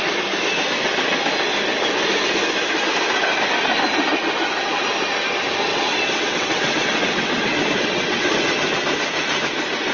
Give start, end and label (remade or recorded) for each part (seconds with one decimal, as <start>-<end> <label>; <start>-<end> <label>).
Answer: 0.0-5.7 recorded; 5.7-8.3 remade; 8.3-9.9 recorded